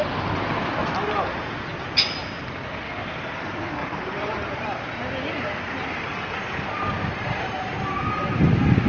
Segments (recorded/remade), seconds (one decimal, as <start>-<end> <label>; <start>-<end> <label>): 0.0-0.8 recorded; 0.8-1.7 remade; 1.7-3.8 recorded; 3.8-4.5 remade; 4.5-7.0 recorded; 7.0-7.7 remade; 7.7-8.9 recorded